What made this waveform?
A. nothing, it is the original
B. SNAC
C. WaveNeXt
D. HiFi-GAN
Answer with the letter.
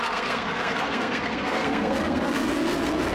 B